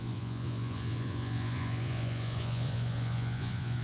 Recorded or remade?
remade